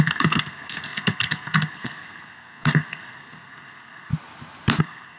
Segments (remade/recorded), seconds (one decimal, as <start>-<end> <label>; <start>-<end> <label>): 0.0-4.1 remade; 4.1-4.8 recorded; 4.8-5.2 remade